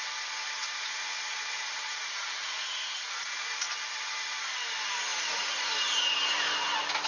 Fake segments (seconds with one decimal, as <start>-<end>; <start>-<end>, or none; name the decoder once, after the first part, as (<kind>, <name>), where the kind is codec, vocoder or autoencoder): 0.6-3.6 (vocoder, Vocos); 5.1-5.7